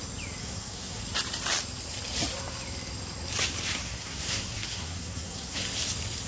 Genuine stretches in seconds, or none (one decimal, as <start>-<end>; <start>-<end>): 0.0-0.4; 1.0-3.7; 5.6-6.3